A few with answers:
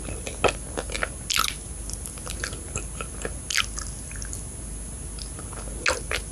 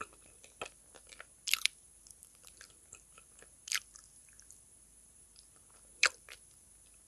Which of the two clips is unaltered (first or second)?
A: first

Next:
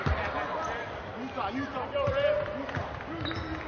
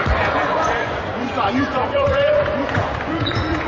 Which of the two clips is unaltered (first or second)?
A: first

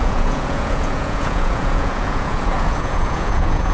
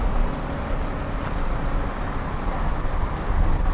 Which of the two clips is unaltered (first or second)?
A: second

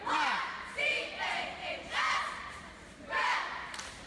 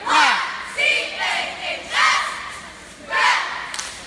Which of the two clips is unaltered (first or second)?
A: second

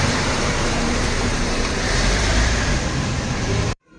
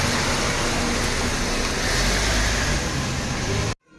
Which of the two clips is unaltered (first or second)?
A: second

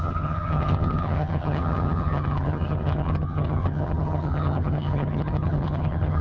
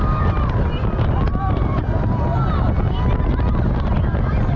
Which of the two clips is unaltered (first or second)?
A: second